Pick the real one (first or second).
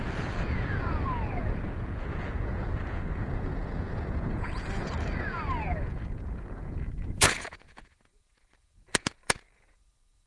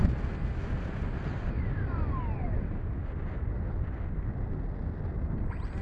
second